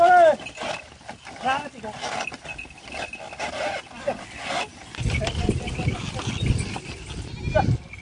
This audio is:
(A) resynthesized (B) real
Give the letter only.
B